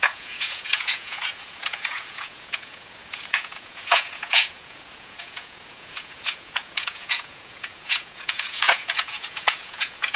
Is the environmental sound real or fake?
fake